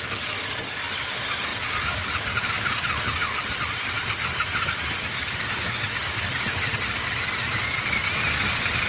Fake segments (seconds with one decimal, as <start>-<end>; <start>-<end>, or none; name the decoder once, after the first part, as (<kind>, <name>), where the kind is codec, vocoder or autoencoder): none